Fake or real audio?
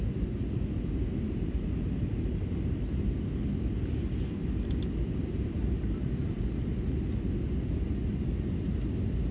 real